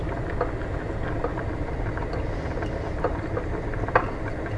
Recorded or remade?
recorded